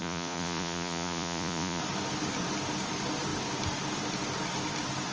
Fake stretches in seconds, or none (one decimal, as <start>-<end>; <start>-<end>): 0.0-1.8